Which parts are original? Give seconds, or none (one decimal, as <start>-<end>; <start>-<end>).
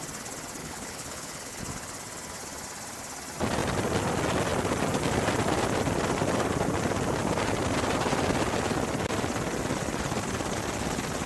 0.0-0.6; 1.6-11.3